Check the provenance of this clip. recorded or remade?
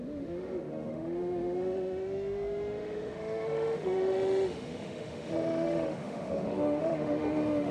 remade